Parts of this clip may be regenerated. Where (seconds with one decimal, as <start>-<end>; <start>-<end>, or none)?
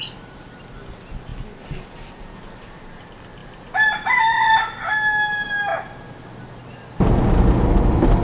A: none